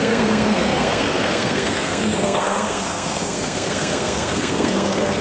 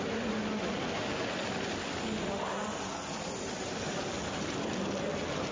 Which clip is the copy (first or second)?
first